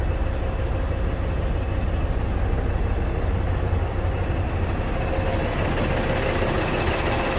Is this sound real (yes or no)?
yes